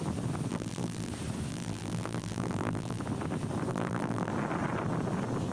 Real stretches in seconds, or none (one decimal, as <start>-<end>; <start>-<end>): 0.0-0.5; 1.1-1.5; 3.0-3.7; 4.3-5.5